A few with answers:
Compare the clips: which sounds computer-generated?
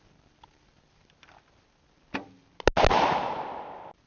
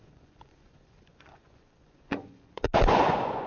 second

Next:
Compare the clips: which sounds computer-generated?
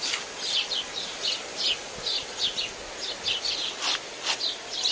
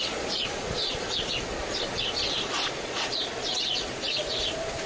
second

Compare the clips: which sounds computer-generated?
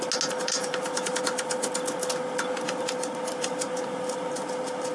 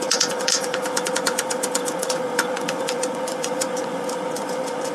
second